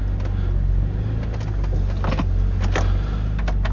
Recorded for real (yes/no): yes